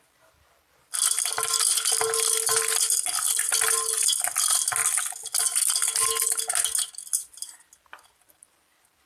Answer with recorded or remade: recorded